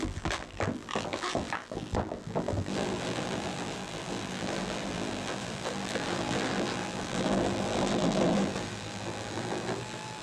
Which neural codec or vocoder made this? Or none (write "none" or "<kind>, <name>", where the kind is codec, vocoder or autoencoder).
vocoder, BigVGAN v2